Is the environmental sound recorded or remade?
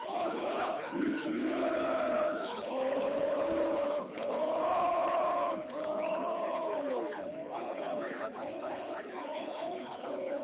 remade